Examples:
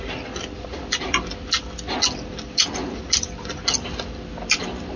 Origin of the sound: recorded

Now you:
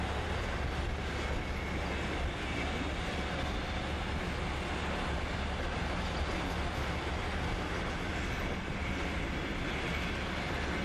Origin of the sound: recorded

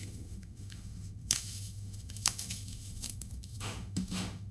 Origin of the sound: remade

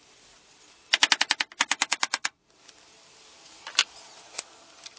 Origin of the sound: recorded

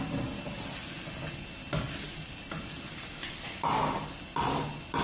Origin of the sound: recorded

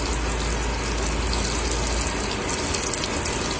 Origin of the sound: recorded